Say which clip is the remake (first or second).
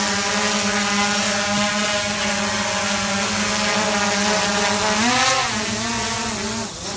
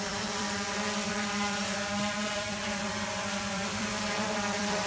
second